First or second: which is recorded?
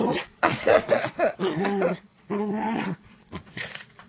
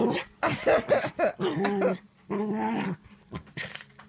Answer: second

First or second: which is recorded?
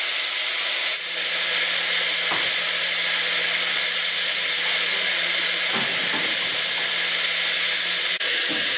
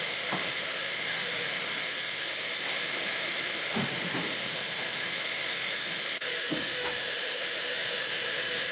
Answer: first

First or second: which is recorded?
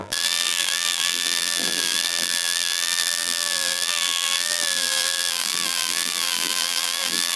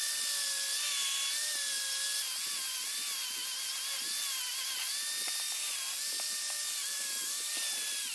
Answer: second